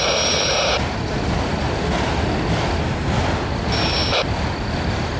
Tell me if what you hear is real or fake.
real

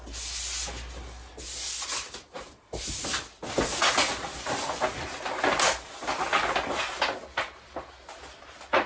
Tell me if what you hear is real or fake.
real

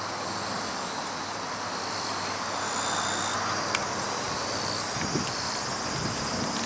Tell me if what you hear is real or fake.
real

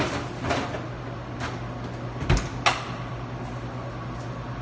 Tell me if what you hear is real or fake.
real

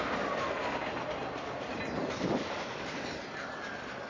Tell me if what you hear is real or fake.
real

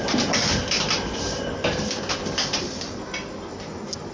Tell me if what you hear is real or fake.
real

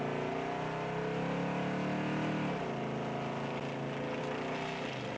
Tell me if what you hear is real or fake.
real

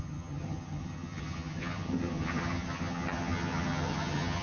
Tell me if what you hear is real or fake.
fake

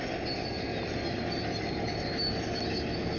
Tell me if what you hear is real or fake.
real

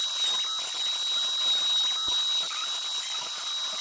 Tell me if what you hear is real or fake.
real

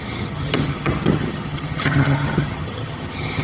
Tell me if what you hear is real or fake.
fake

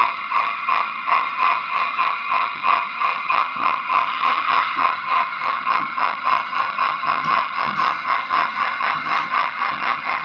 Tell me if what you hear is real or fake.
fake